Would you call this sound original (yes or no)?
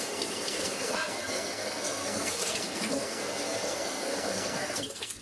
no